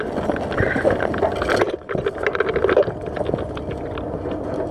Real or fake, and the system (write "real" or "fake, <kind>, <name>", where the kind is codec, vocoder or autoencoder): real